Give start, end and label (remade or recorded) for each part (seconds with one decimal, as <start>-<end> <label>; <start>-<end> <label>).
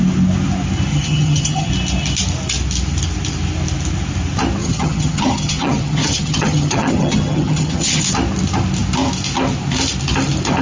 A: 0.0-0.9 recorded; 0.9-1.7 remade; 1.7-4.6 recorded; 4.6-8.0 remade; 8.0-10.6 recorded